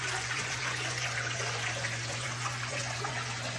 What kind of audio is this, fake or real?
fake